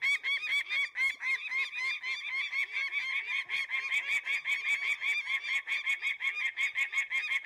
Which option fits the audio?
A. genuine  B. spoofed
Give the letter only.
A